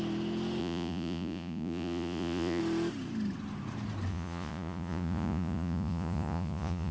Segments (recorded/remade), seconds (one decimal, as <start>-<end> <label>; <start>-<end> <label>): 0.0-0.6 recorded; 0.6-2.6 remade; 2.6-4.1 recorded; 4.1-6.9 remade